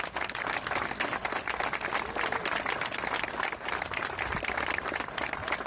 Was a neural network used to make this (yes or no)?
no